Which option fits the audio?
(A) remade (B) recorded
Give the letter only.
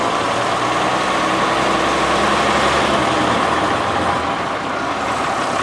B